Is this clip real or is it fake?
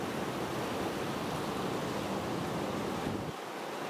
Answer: real